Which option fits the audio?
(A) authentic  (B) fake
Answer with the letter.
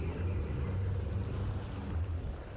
A